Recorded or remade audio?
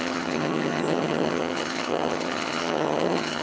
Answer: remade